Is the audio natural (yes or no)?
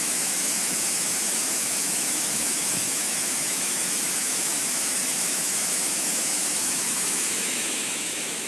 no